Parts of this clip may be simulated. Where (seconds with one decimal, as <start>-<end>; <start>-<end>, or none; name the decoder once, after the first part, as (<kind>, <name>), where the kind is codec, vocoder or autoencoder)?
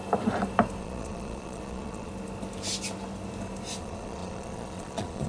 0.8-2.1 (vocoder, Vocos); 3.8-5.3